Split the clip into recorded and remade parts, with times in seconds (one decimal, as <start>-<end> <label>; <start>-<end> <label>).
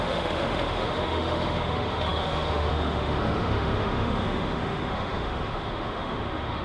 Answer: 0.0-6.6 remade